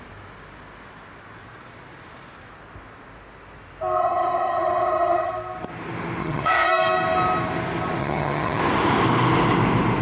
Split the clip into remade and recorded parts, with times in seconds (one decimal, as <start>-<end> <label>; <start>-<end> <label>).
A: 0.0-4.0 recorded; 4.0-5.3 remade; 5.3-6.2 recorded; 6.2-6.7 remade; 6.7-8.0 recorded; 8.0-8.6 remade; 8.6-10.0 recorded